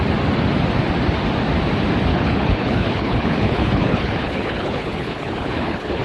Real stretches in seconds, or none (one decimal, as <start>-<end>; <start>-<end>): 0.0-2.1